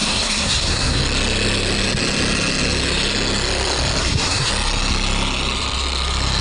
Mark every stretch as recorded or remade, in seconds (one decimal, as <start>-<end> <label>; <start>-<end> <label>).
0.0-1.0 remade; 1.0-4.0 recorded; 4.0-4.5 remade; 4.5-6.4 recorded